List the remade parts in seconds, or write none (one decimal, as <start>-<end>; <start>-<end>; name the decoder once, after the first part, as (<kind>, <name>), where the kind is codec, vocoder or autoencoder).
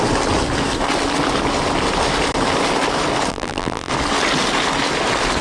3.3-3.9 (vocoder, BigVGAN v2)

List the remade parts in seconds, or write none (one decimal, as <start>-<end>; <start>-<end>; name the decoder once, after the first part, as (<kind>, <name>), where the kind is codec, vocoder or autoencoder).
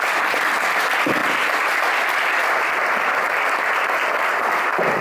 none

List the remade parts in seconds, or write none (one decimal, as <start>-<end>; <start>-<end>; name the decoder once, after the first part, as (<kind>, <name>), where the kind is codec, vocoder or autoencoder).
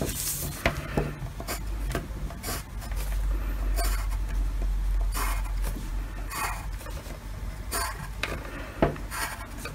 none